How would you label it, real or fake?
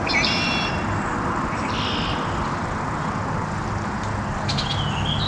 real